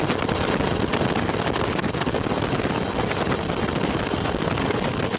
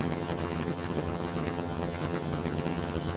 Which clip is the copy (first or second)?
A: second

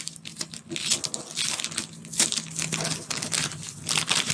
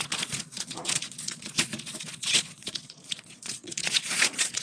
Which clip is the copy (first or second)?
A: second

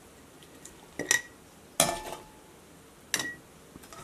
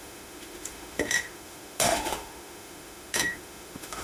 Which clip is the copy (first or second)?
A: second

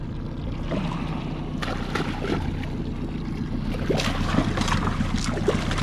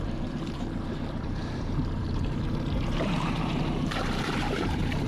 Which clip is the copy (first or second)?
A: second